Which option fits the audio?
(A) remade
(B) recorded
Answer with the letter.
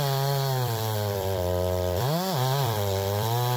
A